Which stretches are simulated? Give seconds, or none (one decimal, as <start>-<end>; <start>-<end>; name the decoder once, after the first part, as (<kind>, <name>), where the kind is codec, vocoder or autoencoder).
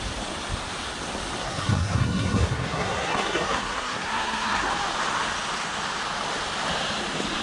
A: 1.4-4.7 (codec, SNAC)